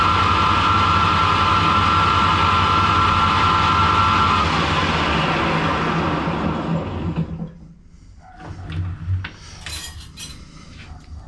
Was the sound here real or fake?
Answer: real